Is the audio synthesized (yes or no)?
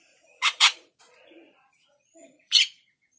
yes